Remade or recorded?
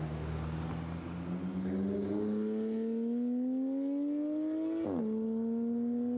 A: recorded